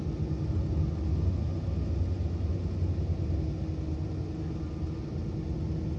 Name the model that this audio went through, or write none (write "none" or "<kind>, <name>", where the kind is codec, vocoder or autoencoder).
none